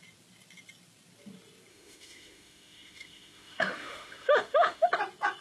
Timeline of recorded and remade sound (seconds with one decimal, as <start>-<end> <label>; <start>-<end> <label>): 0.0-1.7 recorded; 1.7-4.9 remade; 4.9-5.4 recorded